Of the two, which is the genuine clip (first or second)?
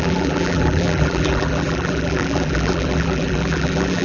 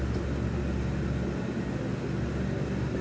second